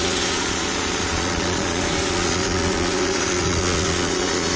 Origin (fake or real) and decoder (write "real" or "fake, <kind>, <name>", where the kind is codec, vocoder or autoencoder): fake, vocoder, Vocos